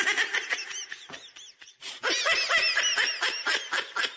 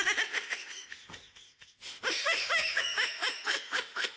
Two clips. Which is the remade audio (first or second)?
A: second